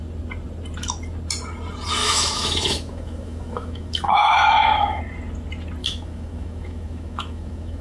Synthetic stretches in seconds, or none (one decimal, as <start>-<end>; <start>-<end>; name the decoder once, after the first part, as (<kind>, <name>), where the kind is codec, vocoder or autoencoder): 2.0-5.0 (autoencoder, DAC-VAE); 5.8-7.8